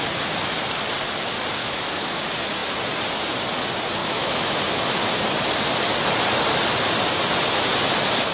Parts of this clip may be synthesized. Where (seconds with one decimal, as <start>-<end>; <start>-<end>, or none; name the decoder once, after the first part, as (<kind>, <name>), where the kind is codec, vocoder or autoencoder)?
1.6-2.2 (autoencoder, DAC-VAE); 4.0-4.6